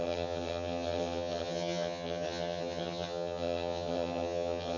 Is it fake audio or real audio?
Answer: fake